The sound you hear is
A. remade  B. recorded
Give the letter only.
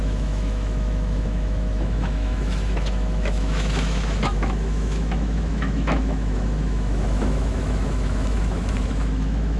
A